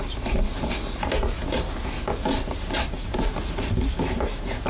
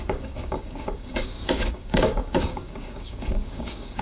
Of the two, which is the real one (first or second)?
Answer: first